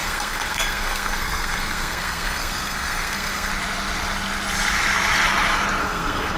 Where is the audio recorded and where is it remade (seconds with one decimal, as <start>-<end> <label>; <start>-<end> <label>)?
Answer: 0.0-3.5 remade; 3.5-5.8 recorded; 5.8-6.4 remade